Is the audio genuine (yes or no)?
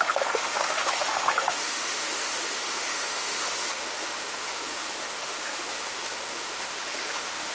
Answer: no